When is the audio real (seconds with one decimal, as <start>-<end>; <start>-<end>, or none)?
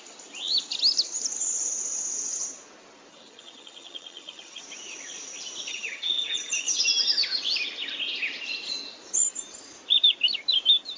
0.0-3.1; 4.6-5.7; 6.8-11.0